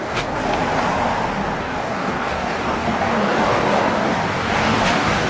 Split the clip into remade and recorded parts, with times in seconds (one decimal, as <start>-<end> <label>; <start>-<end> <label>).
0.0-0.4 remade; 0.4-1.6 recorded; 1.6-5.3 remade